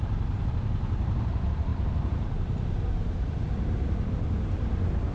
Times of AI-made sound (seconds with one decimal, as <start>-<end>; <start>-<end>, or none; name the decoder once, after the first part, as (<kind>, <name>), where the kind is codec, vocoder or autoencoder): 0.0-5.1 (vocoder, BigVGAN v2)